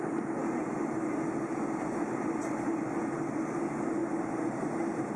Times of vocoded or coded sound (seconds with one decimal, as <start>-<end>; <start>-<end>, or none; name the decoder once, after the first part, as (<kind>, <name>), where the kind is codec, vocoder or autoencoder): none